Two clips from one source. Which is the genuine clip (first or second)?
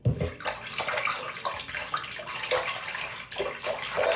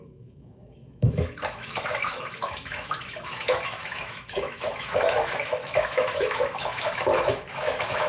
first